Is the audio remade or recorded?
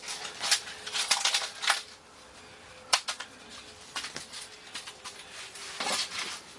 recorded